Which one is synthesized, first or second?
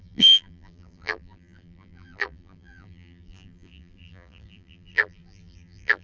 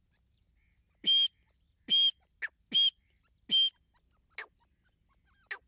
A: first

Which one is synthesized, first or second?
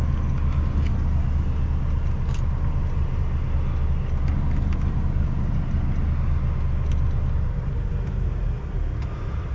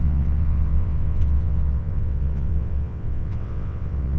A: second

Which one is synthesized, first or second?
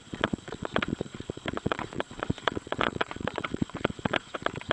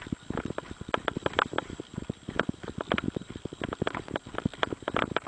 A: first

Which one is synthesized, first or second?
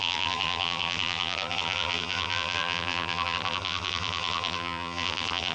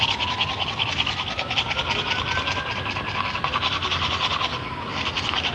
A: first